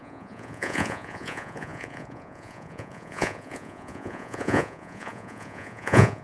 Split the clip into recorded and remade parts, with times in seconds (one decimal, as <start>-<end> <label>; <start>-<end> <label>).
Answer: 0.0-6.2 remade